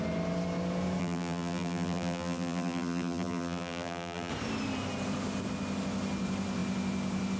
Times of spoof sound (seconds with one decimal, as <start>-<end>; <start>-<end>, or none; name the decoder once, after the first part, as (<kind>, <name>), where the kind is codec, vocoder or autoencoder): 1.0-4.3 (vocoder, BigVGAN v2)